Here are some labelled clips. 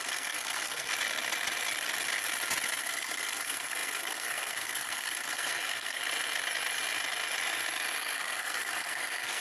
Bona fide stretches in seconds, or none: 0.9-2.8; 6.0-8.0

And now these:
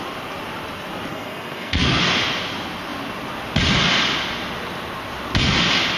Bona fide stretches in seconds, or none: 0.0-1.1; 2.0-6.0

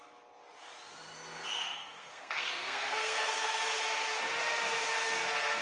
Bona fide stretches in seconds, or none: 0.0-1.6; 3.6-5.6

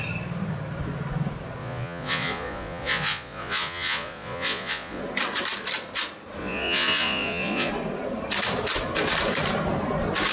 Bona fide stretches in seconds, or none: 0.0-1.6; 5.0-6.4; 7.7-10.3

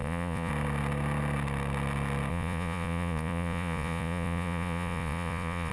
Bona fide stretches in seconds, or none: 0.5-2.3

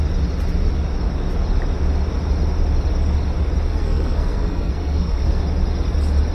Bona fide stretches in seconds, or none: 0.0-3.7; 5.4-6.3